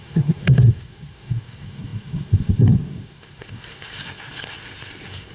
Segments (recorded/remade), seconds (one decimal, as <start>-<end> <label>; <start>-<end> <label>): 0.0-5.3 remade